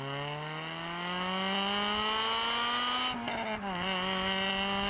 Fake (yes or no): no